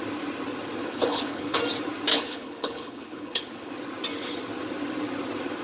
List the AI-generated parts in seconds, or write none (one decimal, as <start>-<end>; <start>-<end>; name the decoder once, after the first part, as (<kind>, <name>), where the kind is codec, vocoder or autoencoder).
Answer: 0.8-1.6 (codec, HILCodec); 2.1-3.7

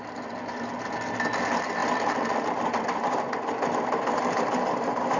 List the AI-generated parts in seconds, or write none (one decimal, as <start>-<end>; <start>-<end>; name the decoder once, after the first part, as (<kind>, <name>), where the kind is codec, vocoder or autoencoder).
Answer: none

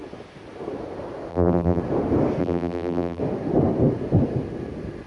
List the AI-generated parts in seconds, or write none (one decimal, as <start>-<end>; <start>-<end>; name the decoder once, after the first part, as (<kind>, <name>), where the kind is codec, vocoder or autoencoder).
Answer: 1.3-1.8 (vocoder, BigVGAN v2); 2.4-3.2